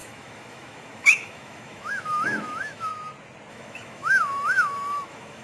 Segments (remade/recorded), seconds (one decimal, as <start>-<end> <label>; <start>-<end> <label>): 0.0-2.9 remade; 2.9-3.5 recorded; 3.5-5.4 remade